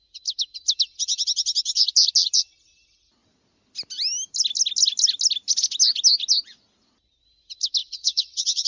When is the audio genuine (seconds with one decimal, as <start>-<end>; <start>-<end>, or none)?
0.0-7.8